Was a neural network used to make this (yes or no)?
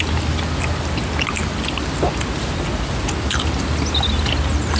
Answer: no